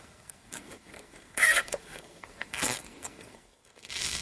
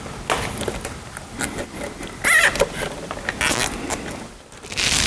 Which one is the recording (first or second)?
second